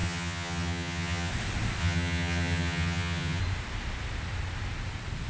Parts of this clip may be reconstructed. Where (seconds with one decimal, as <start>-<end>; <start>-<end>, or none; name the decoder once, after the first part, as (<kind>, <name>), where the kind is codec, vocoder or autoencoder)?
0.0-1.3 (vocoder, HiFi-GAN); 1.8-3.4